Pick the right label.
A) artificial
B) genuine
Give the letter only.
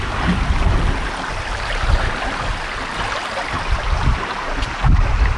B